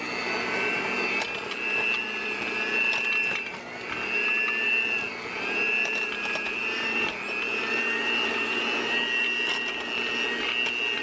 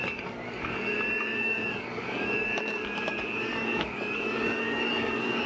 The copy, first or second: second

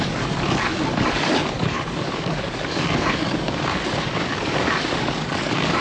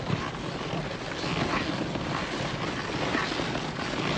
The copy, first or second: first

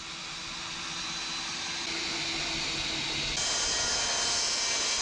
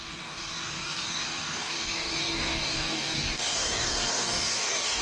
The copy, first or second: second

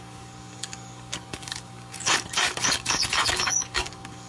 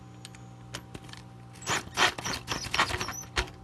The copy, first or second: first